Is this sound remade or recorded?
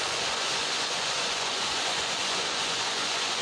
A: remade